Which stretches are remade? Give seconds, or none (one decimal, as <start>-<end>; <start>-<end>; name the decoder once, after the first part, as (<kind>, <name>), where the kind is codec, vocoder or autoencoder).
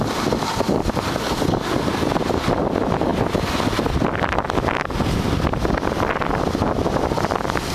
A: 0.0-3.1 (vocoder, BigVGAN v2); 5.1-7.7